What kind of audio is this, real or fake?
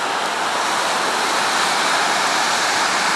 real